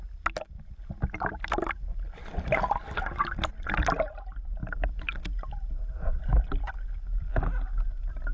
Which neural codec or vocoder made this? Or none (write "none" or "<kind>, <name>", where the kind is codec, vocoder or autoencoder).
none